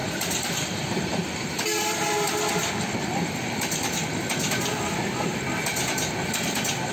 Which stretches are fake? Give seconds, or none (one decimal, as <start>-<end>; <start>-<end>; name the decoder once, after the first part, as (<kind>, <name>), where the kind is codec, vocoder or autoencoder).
0.0-2.7 (vocoder, BigVGAN v2)